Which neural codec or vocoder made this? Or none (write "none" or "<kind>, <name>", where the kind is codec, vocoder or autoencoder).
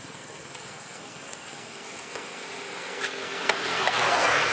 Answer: codec, SNAC